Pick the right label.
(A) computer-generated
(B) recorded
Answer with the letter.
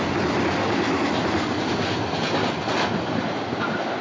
B